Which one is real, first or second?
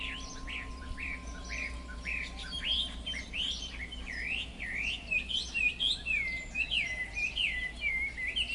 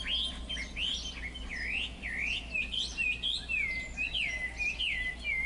second